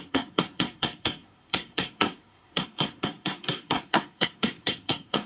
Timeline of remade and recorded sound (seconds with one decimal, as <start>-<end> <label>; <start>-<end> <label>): 0.0-5.3 remade